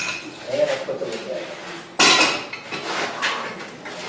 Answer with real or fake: real